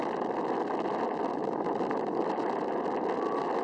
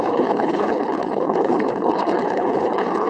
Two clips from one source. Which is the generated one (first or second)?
second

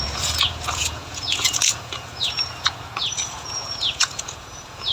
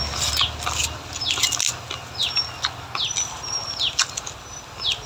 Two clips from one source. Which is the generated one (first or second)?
first